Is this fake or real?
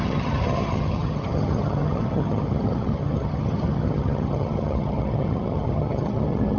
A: fake